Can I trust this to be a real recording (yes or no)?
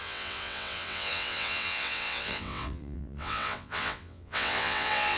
no